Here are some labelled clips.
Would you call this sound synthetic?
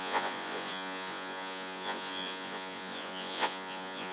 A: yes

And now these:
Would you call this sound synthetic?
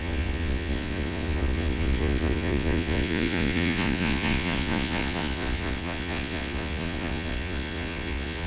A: yes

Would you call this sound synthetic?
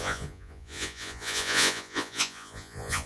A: yes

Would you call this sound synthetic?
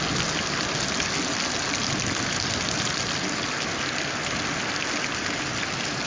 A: no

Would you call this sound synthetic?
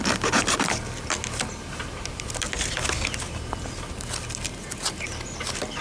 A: no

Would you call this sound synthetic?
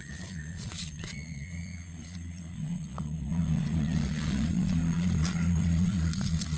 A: yes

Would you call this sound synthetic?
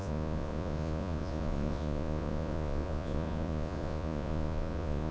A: yes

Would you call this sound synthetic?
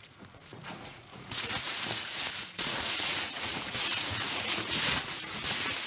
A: yes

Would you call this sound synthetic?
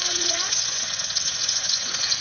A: yes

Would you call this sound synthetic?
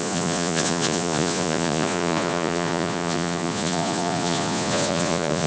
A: yes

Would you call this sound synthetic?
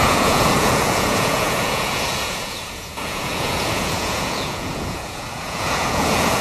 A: yes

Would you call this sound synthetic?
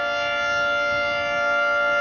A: no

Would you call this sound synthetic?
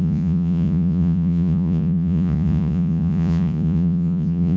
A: yes